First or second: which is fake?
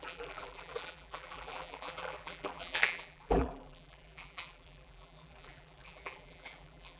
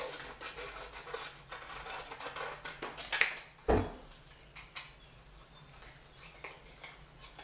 first